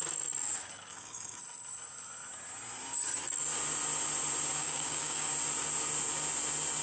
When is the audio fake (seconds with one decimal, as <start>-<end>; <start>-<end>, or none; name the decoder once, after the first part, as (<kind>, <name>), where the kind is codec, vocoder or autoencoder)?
0.9-1.4 (codec, DAC); 4.6-5.3

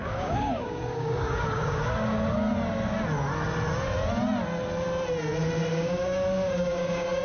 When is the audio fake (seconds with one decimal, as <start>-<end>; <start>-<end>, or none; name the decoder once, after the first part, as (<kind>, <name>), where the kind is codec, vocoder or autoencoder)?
0.0-1.9 (codec, DAC); 5.7-7.2

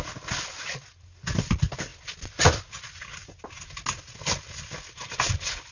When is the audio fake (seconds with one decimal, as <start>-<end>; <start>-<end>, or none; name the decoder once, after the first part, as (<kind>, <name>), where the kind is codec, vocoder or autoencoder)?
none